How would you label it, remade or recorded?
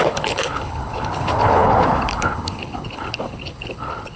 remade